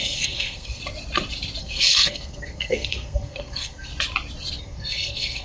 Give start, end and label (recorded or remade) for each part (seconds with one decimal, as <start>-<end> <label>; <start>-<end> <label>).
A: 0.0-0.8 remade; 0.8-1.6 recorded; 1.6-3.9 remade; 3.9-4.6 recorded; 4.6-5.4 remade